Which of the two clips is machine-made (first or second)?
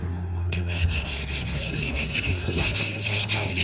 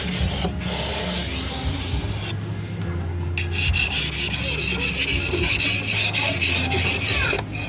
first